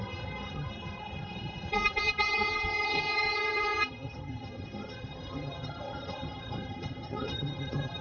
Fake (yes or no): yes